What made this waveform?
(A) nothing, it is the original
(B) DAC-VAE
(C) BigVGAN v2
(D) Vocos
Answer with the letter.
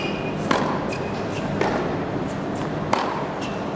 A